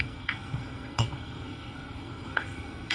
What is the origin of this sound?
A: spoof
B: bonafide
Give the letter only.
A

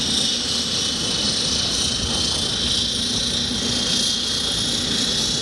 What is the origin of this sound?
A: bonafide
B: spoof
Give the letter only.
A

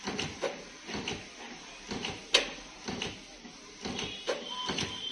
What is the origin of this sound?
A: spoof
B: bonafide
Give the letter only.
B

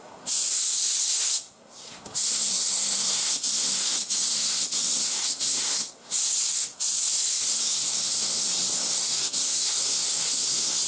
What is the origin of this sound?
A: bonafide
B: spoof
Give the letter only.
B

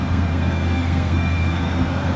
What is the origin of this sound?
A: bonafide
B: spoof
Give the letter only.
B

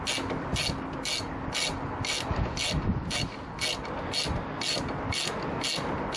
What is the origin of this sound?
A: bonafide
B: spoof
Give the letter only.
A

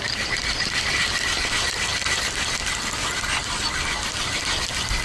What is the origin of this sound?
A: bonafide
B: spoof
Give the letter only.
A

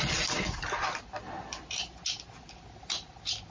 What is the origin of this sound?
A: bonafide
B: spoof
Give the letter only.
A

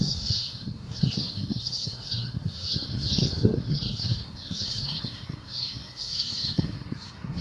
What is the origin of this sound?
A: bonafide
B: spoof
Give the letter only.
B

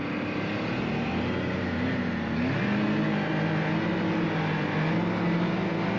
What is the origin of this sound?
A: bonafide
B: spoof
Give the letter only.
A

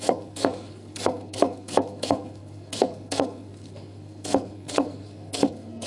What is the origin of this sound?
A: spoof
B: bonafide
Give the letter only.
A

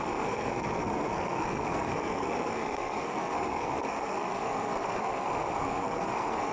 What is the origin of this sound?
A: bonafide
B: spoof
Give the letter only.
B